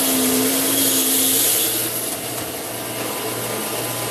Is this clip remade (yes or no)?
no